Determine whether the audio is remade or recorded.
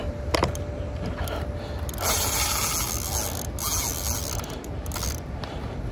recorded